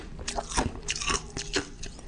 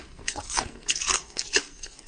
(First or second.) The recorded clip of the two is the first